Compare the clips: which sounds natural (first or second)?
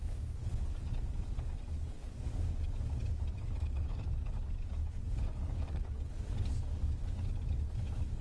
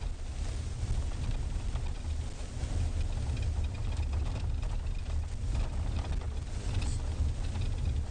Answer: second